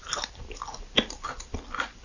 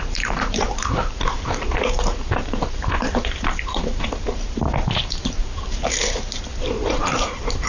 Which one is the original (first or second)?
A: first